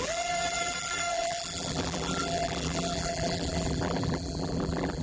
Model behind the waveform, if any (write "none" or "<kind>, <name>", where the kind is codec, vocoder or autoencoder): vocoder, BigVGAN v2